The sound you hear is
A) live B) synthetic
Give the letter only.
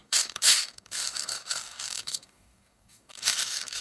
B